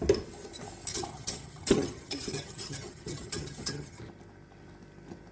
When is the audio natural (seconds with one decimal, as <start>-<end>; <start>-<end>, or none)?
0.0-0.9; 4.0-5.3